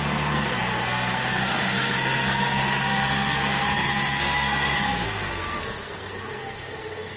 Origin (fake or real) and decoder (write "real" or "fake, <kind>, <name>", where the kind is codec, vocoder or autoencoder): fake, codec, SNAC